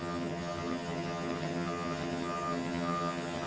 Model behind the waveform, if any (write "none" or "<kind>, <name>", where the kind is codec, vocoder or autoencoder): vocoder, HiFi-GAN